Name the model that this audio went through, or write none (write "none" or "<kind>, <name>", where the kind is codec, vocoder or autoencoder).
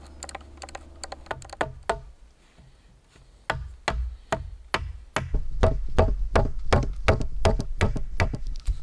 none